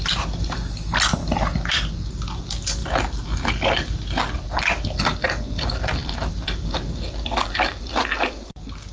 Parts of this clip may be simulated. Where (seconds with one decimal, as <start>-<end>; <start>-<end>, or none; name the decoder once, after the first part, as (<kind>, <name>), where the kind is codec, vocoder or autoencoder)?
none